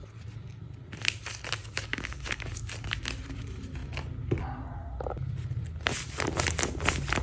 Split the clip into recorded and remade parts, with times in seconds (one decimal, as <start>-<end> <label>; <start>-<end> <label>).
0.0-1.6 recorded; 1.6-2.6 remade; 2.6-7.2 recorded